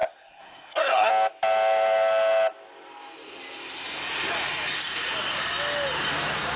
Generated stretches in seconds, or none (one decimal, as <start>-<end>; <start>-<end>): 0.0-1.1